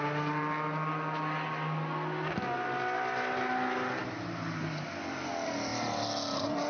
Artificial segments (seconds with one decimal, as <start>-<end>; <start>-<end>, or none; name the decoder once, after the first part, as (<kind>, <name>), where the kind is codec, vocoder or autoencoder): none